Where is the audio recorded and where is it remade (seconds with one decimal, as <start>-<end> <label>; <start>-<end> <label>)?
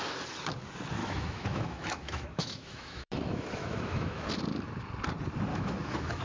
0.0-1.0 recorded; 1.0-4.3 remade; 4.3-5.5 recorded; 5.5-6.2 remade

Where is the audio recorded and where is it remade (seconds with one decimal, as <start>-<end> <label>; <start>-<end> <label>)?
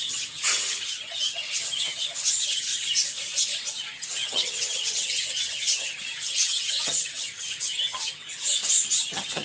0.0-2.7 remade; 2.7-3.7 recorded; 3.7-8.2 remade; 8.2-9.0 recorded; 9.0-9.4 remade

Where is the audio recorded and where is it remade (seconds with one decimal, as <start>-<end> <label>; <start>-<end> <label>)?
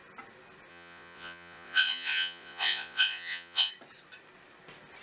0.0-0.7 recorded; 0.7-3.7 remade; 3.7-5.0 recorded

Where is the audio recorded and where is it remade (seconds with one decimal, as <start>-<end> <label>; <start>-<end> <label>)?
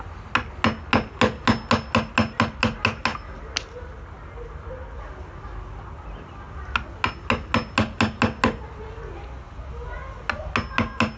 0.0-11.2 recorded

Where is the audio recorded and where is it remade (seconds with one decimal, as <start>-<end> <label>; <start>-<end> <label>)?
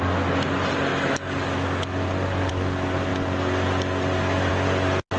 0.0-5.2 recorded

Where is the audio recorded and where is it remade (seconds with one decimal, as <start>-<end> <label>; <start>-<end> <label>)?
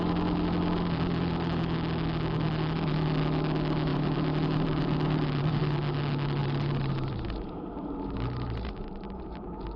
0.0-3.9 recorded; 3.9-5.6 remade; 5.6-6.4 recorded; 6.4-9.2 remade; 9.2-9.8 recorded